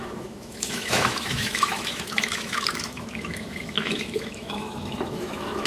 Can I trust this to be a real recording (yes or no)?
no